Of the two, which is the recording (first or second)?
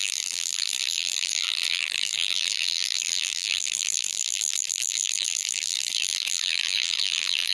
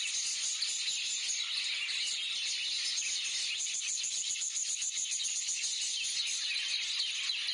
second